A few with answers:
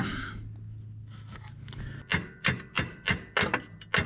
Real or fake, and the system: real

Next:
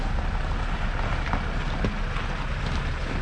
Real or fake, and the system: real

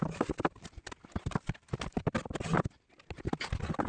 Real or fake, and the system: real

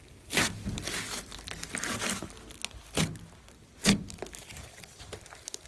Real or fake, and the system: real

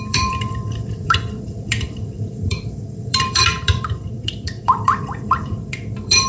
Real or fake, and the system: fake, vocoder, BigVGAN v2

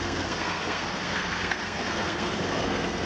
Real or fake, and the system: fake, codec, SNAC